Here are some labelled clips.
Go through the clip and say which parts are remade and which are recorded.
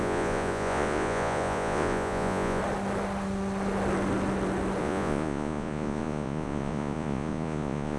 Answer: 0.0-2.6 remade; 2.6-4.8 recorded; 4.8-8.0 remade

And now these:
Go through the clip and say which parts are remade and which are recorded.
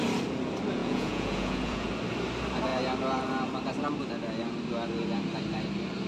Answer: 0.0-0.8 recorded; 0.8-1.9 remade; 1.9-6.1 recorded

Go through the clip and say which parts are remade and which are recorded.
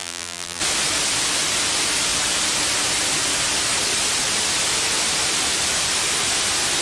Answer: 0.0-0.6 remade; 0.6-6.8 recorded